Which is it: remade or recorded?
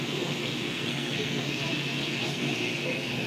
remade